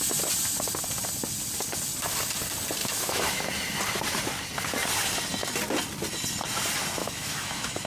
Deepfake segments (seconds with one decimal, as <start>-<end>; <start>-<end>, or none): 2.8-3.4; 7.0-7.9